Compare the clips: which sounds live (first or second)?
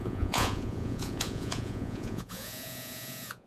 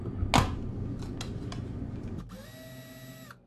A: second